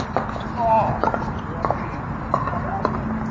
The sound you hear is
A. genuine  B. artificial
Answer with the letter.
A